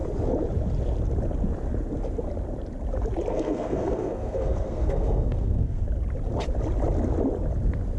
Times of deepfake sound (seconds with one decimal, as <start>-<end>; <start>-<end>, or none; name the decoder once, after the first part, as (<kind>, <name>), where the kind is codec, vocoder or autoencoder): 3.3-5.8 (codec, SNAC)